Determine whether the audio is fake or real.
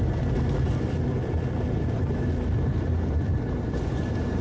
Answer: real